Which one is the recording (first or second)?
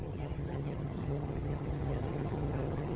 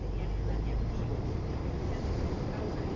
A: second